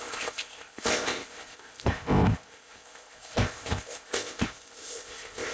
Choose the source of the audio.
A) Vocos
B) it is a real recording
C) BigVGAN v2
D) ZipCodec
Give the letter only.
D